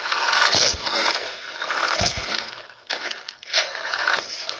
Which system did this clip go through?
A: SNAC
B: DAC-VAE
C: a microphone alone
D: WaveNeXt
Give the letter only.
A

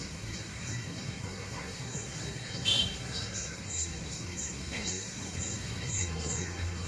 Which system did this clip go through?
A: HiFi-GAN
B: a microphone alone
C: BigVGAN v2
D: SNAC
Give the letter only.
D